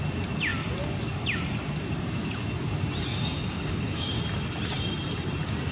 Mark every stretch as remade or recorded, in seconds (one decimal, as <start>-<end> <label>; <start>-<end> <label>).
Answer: 0.0-3.1 recorded; 3.1-4.2 remade; 4.2-5.7 recorded